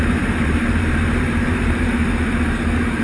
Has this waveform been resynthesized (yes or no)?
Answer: yes